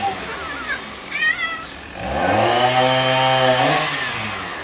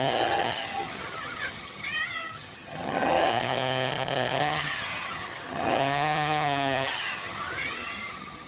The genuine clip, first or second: first